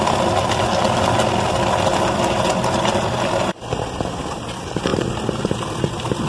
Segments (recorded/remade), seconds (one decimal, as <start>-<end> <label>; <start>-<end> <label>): 0.0-6.3 recorded